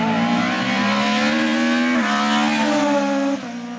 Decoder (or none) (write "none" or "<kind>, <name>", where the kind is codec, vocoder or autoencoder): none